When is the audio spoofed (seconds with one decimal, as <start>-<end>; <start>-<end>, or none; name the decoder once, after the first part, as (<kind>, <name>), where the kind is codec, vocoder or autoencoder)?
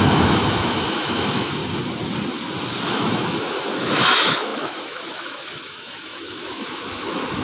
0.0-1.6 (autoencoder, DAC-VAE); 2.9-7.4